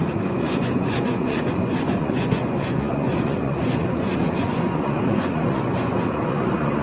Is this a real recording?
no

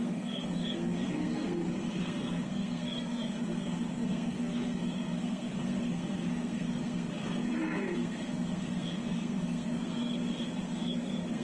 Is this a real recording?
no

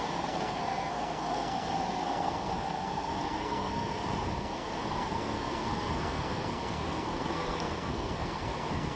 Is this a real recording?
no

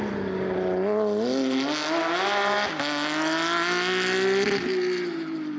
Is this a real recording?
yes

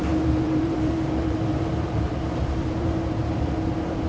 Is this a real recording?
no